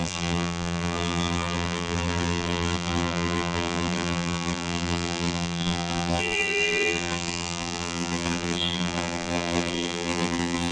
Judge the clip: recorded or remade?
remade